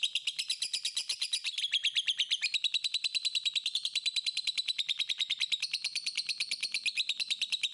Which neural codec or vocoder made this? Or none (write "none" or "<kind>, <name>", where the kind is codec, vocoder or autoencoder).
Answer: vocoder, BigVGAN v2